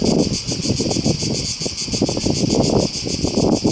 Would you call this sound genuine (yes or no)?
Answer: yes